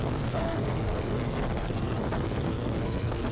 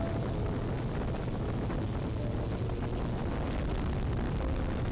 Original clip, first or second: second